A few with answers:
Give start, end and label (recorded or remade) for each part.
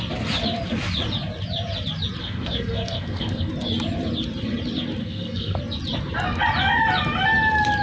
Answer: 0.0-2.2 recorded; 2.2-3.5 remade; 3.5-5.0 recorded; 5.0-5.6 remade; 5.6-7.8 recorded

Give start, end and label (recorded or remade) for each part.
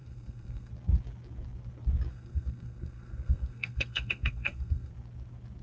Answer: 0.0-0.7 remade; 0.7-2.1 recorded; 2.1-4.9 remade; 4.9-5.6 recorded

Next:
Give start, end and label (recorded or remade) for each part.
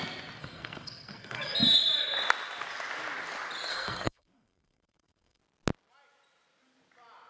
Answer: 0.0-0.4 recorded; 0.4-1.5 remade; 1.5-3.7 recorded; 3.7-5.4 remade; 5.4-7.3 recorded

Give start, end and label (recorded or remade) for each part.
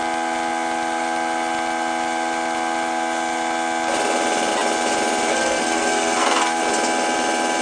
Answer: 0.0-5.3 recorded; 5.3-6.6 remade; 6.6-7.6 recorded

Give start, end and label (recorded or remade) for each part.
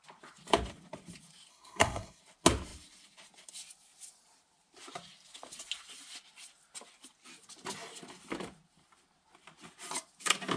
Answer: 0.0-1.5 recorded; 1.5-2.2 remade; 2.2-10.6 recorded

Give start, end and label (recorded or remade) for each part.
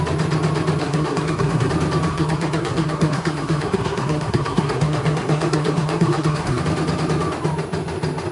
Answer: 0.0-0.8 recorded; 0.8-1.7 remade; 1.7-2.1 recorded; 2.1-6.6 remade; 6.6-8.3 recorded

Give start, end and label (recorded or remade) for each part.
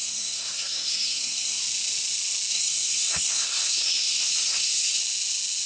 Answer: 0.0-1.6 remade; 1.6-2.5 recorded; 2.5-5.0 remade; 5.0-5.7 recorded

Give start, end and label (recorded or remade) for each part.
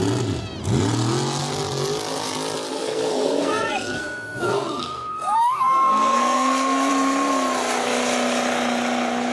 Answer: 0.0-2.7 recorded; 2.7-6.9 remade; 6.9-9.3 recorded